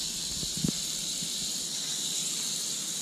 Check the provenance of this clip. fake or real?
real